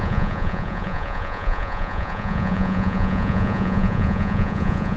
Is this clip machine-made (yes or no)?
yes